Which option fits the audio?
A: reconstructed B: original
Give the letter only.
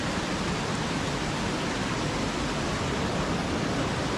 B